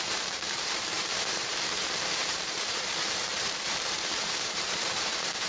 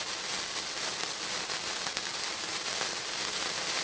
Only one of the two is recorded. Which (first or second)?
second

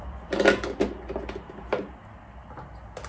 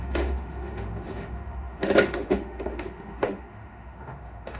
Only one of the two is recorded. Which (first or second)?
first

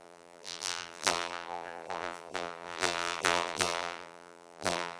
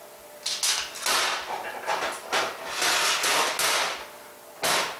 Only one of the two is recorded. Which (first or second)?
second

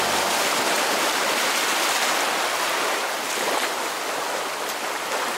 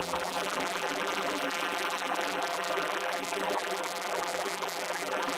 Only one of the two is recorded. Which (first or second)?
first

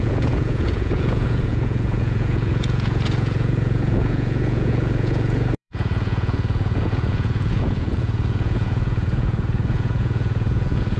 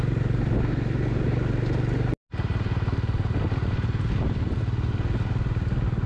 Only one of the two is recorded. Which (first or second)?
second